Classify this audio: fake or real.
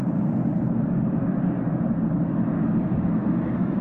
fake